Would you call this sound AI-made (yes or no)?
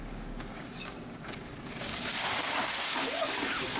yes